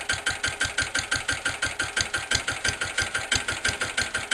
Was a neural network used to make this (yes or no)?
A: no